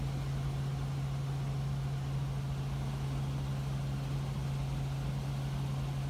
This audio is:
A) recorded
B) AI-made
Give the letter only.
A